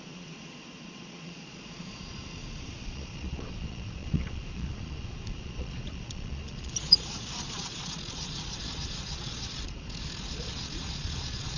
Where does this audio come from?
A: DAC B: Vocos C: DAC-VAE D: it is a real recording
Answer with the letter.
B